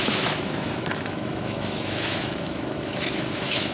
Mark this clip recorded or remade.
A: remade